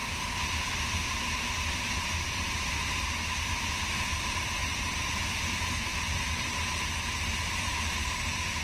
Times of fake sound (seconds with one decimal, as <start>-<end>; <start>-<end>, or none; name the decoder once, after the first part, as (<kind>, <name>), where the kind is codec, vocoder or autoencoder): 1.2-5.9 (vocoder, BigVGAN v2); 6.8-8.6